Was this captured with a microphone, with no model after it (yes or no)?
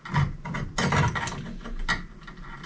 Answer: yes